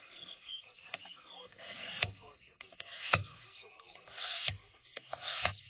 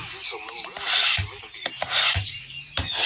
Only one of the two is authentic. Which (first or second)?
second